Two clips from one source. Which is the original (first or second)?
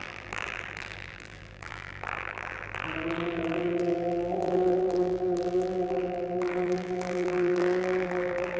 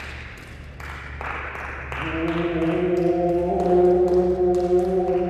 second